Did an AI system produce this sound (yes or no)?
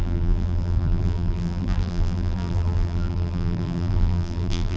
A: yes